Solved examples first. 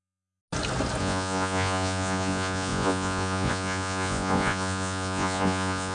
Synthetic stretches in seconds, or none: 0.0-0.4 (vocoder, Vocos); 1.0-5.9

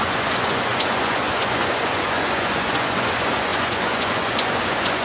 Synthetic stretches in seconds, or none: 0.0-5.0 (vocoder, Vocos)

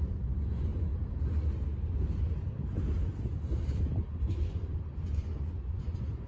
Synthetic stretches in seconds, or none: 0.0-0.7 (vocoder, Vocos); 4.3-6.3

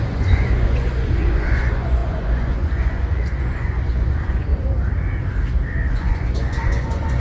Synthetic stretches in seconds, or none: 0.0-4.5 (vocoder, Vocos); 5.9-7.2

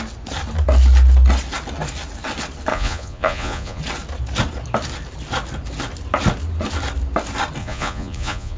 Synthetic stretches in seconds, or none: 2.7-3.8 (vocoder, Vocos); 7.6-8.6